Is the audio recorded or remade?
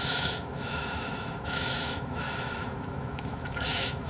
remade